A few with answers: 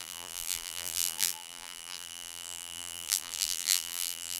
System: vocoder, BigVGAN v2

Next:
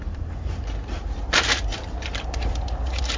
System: vocoder, BigVGAN v2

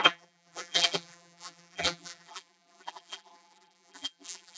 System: vocoder, BigVGAN v2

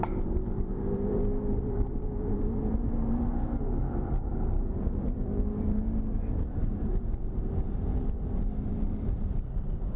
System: vocoder, BigVGAN v2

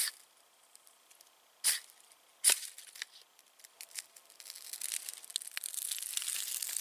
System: none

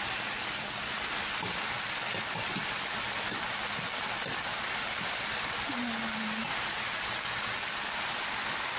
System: none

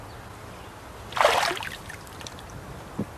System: none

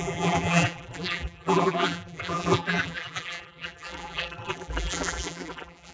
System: vocoder, BigVGAN v2